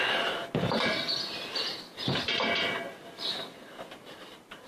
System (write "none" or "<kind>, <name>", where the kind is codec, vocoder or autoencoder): none